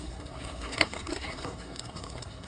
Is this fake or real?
fake